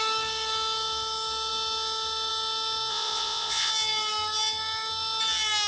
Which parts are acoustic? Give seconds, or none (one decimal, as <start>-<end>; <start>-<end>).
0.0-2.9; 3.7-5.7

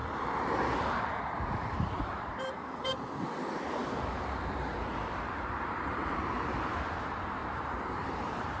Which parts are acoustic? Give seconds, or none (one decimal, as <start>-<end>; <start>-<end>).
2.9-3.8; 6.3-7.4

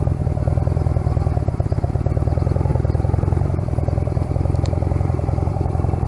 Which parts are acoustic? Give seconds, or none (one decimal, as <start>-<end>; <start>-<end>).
0.0-2.7